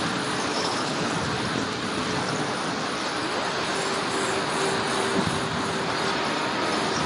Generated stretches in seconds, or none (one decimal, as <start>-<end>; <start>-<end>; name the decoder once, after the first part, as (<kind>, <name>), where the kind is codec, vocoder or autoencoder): 0.5-1.1 (codec, HILCodec)